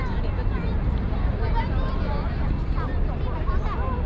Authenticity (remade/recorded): recorded